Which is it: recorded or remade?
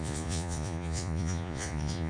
remade